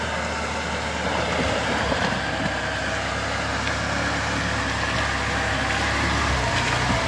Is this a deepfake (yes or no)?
no